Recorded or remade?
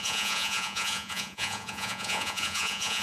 remade